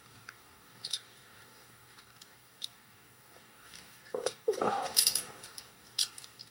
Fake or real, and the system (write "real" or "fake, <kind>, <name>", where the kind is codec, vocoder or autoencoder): fake, codec, DAC